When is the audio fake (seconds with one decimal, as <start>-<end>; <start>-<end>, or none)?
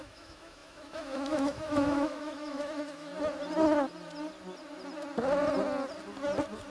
0.0-3.1